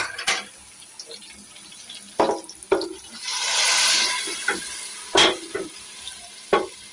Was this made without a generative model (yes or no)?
yes